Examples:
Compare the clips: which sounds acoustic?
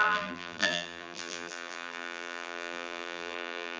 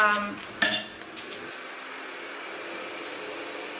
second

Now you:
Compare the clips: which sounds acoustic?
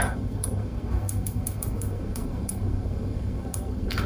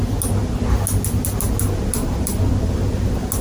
second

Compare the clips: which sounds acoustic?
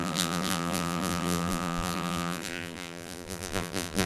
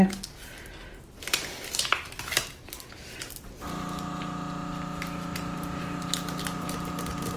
second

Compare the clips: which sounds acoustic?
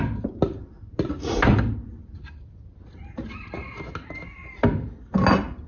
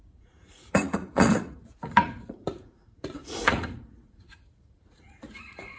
first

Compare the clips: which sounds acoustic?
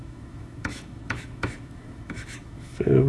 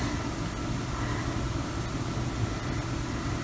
second